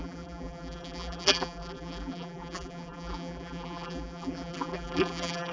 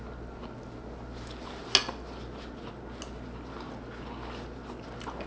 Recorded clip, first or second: second